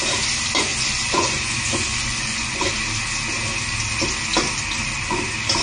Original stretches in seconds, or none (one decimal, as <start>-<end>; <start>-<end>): 0.0-0.7; 2.7-5.6